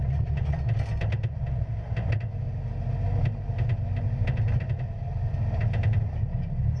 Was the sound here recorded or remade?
recorded